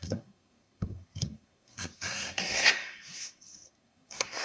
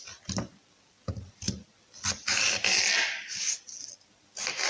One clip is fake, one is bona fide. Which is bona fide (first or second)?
second